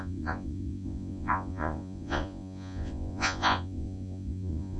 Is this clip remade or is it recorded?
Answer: remade